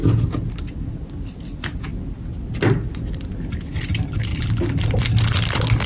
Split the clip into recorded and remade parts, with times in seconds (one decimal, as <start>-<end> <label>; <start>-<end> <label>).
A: 0.0-5.9 recorded